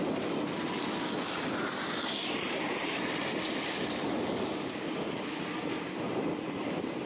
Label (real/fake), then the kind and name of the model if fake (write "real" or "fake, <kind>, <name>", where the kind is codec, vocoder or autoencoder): real